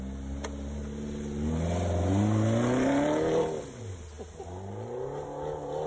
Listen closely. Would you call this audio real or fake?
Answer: real